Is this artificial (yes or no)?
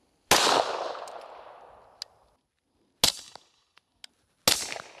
no